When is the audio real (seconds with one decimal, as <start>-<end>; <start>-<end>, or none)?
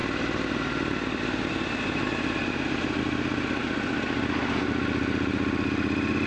0.0-6.3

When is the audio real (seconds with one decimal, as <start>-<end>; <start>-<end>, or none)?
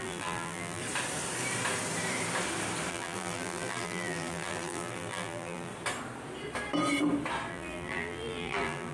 0.8-2.9; 5.7-7.5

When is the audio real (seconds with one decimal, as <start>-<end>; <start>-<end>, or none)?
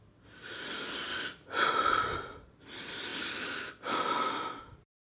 3.1-3.7